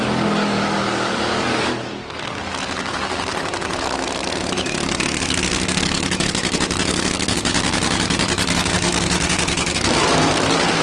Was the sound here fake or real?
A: fake